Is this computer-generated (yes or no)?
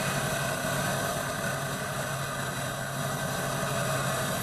no